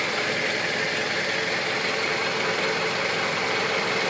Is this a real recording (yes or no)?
yes